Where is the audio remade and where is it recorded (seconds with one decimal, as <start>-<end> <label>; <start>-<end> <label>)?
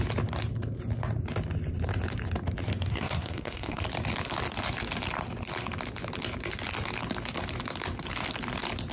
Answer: 0.0-2.9 recorded; 2.9-3.8 remade; 3.8-8.9 recorded